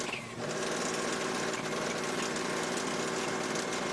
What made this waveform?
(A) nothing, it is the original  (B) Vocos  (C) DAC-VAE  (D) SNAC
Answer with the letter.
A